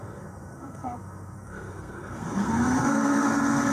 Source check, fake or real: fake